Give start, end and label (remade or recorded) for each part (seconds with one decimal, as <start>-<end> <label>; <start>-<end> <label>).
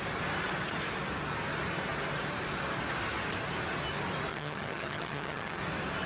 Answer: 0.0-4.3 recorded; 4.3-5.6 remade; 5.6-6.1 recorded